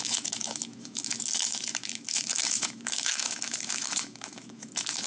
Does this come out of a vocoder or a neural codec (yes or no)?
yes